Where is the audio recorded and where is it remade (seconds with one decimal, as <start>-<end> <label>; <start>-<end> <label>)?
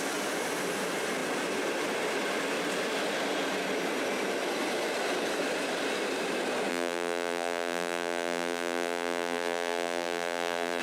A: 0.0-6.7 recorded; 6.7-10.8 remade